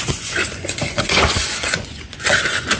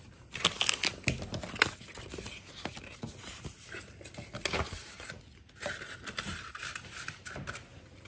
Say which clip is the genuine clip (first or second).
second